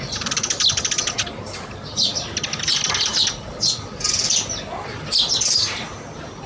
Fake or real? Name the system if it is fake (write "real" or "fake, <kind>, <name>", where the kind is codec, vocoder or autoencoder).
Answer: real